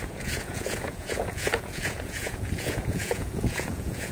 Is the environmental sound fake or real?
fake